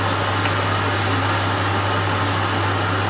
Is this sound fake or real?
real